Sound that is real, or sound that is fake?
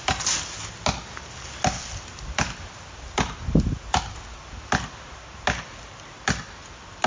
real